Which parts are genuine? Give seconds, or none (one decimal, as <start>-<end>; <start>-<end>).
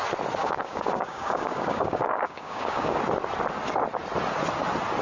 0.0-0.4; 3.0-5.0